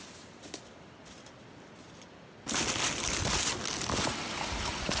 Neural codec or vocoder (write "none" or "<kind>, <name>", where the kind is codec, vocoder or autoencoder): none